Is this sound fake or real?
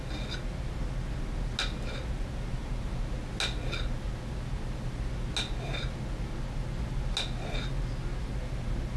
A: real